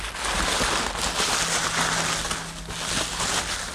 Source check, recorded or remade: recorded